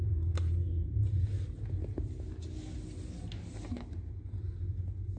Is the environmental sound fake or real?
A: real